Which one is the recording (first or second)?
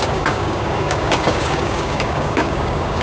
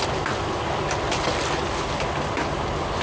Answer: second